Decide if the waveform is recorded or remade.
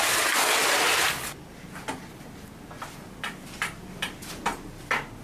recorded